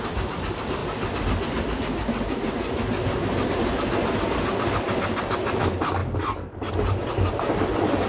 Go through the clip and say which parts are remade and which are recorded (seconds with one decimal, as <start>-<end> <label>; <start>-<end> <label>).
0.0-8.1 recorded